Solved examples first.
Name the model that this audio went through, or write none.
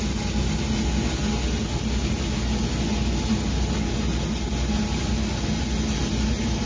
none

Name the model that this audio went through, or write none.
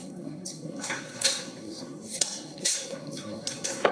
codec, SNAC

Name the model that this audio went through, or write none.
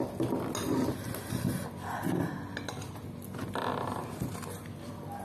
none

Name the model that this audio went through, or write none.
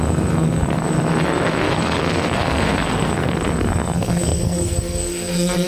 codec, SNAC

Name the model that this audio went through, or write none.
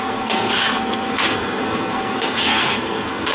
codec, SNAC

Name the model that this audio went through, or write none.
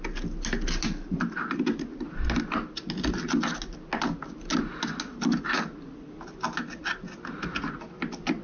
none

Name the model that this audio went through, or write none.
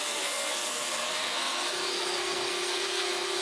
codec, SNAC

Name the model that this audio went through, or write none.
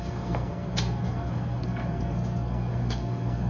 codec, SNAC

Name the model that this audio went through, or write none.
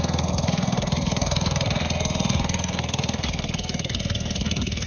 codec, SNAC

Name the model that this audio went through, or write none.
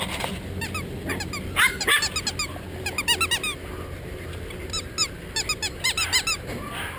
none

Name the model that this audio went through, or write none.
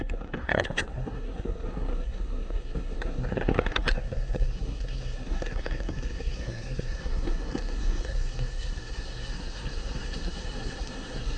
codec, SNAC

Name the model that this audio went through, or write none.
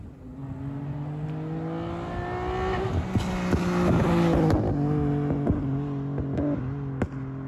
none